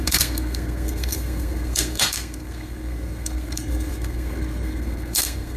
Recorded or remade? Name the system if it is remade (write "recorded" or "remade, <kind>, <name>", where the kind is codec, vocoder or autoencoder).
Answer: remade, codec, SNAC